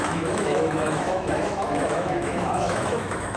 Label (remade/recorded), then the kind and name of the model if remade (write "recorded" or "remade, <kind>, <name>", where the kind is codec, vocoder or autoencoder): remade, autoencoder, DAC-VAE